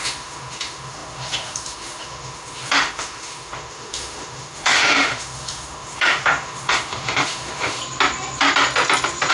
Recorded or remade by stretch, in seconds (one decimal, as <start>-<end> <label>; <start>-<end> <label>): 0.0-7.8 remade; 7.8-9.3 recorded